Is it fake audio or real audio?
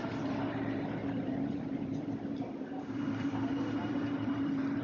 fake